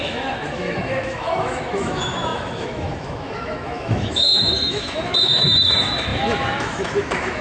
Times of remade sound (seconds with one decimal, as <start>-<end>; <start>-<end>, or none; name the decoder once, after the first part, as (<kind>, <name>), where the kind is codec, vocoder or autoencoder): 0.0-7.4 (autoencoder, DAC-VAE)